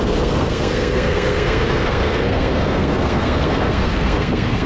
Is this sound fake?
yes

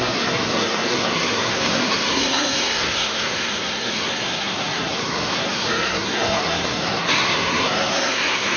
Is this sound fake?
yes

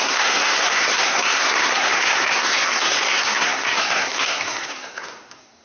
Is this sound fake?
yes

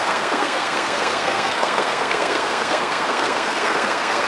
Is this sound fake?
yes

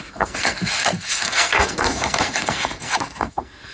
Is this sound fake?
yes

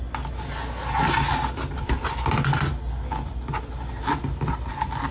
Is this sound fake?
no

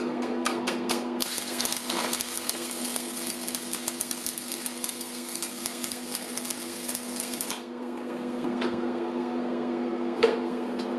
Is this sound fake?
yes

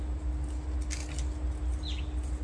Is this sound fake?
no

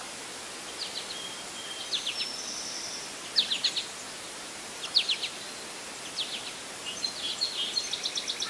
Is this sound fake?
no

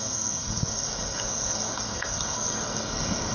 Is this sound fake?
yes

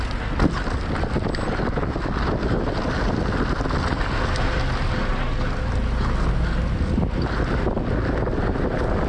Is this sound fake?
no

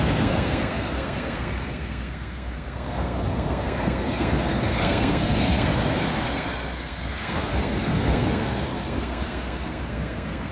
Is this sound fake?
yes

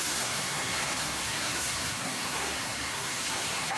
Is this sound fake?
yes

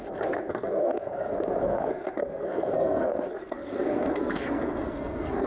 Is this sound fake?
yes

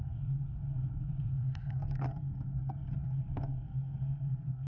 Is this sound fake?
yes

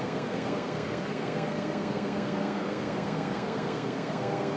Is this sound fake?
yes